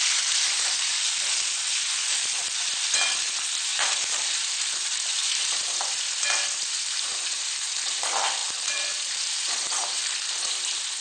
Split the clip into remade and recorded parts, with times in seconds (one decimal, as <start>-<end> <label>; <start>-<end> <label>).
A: 0.0-11.0 remade